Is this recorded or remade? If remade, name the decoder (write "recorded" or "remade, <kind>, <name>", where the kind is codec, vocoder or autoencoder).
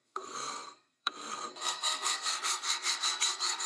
remade, codec, SNAC